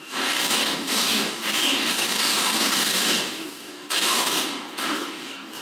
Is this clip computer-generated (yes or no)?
yes